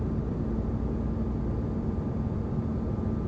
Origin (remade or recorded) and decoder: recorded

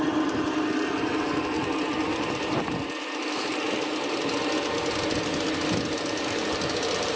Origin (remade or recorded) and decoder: recorded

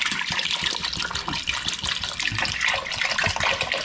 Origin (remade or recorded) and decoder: recorded